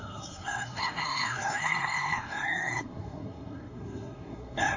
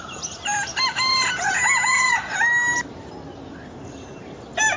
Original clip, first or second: second